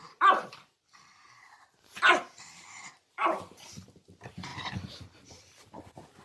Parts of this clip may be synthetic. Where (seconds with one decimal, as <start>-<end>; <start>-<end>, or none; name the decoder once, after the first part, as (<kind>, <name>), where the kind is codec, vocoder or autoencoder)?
0.0-4.5 (vocoder, BigVGAN v2); 5.3-6.2